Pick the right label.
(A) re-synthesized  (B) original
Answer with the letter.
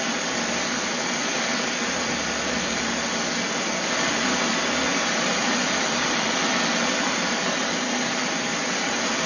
B